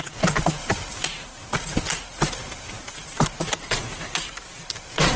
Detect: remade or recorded recorded